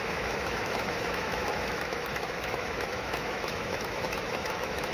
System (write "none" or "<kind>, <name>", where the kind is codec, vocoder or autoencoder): autoencoder, DAC-VAE